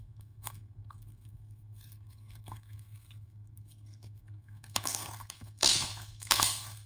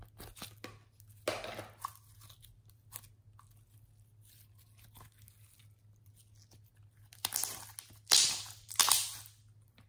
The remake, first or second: first